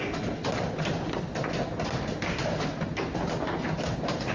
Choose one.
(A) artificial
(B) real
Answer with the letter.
B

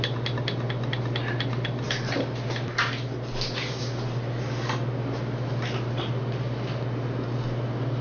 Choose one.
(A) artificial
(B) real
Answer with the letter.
B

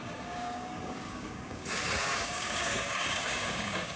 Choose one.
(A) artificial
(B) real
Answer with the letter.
A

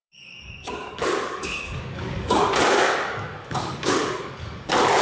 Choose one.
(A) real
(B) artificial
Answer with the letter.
B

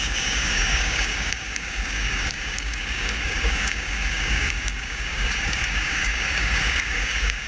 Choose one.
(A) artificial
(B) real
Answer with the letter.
A